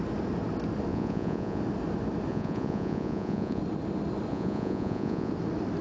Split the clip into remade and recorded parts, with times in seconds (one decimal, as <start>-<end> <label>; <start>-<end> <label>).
0.0-0.9 recorded; 0.9-1.6 remade; 1.6-2.3 recorded; 2.3-3.6 remade; 3.6-4.3 recorded; 4.3-5.3 remade; 5.3-5.8 recorded